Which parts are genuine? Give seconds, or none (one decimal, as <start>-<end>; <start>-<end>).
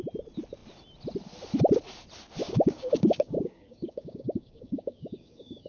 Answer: 0.0-2.4